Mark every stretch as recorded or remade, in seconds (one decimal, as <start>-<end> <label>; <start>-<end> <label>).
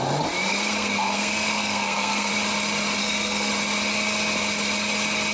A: 0.0-0.5 recorded; 0.5-2.3 remade; 2.3-3.0 recorded; 3.0-3.5 remade; 3.5-5.3 recorded